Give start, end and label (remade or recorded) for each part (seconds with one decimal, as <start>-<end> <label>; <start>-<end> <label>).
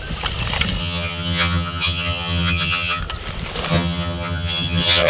0.0-0.8 recorded; 0.8-3.0 remade; 3.0-3.7 recorded; 3.7-5.1 remade